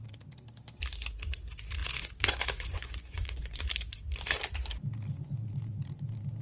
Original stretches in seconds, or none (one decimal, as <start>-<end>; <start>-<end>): 0.0-1.8; 3.6-6.4